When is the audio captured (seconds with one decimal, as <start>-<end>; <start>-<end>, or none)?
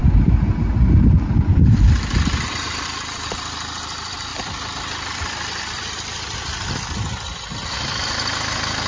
0.0-0.6; 4.3-5.1